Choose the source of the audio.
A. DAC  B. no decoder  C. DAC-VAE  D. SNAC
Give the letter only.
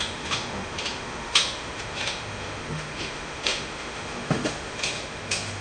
C